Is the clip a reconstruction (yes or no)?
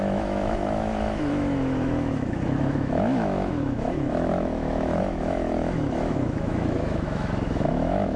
yes